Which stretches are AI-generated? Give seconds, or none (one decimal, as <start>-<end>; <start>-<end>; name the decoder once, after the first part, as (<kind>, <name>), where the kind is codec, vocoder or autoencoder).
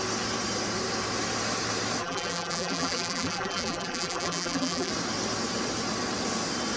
2.0-4.9 (vocoder, BigVGAN v2)